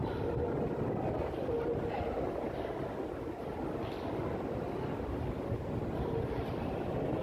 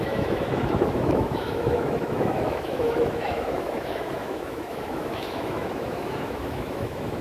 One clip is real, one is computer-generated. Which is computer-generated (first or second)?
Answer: second